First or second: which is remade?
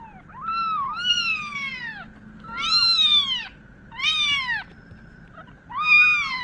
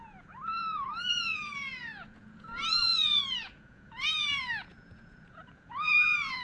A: second